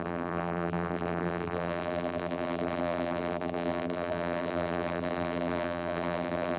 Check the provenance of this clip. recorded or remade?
remade